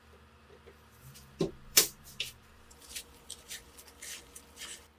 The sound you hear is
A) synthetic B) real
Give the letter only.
A